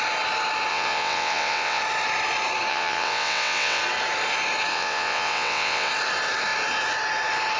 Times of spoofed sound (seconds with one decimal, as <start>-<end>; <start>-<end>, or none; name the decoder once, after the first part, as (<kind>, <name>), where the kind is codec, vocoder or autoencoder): 0.7-1.8 (vocoder, WaveNeXt); 2.7-3.8; 4.7-5.9